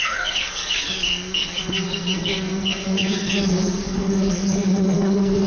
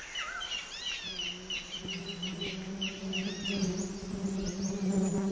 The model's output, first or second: first